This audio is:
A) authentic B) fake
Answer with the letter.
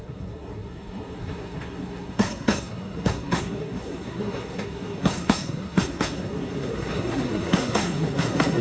B